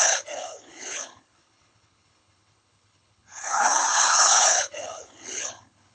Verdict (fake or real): fake